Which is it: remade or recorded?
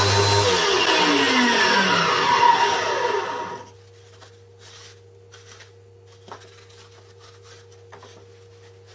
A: recorded